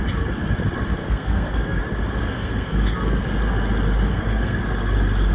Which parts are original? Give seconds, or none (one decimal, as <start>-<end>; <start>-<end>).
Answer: 0.0-1.0; 1.8-2.2; 3.2-4.1; 4.6-5.3